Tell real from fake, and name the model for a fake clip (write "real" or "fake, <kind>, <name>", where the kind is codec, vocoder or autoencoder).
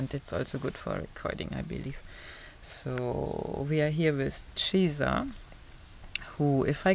real